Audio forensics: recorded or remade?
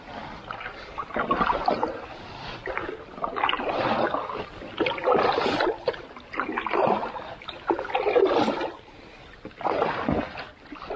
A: recorded